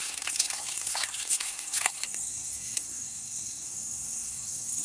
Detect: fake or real fake